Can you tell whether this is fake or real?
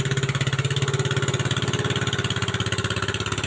real